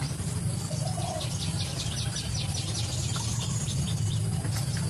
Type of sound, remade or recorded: recorded